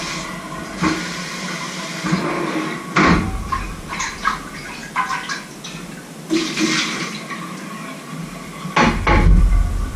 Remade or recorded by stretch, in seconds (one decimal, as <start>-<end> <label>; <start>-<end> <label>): 0.0-10.0 recorded